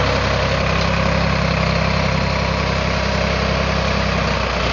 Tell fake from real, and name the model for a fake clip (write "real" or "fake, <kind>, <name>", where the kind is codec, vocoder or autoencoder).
real